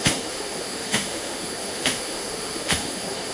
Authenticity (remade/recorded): remade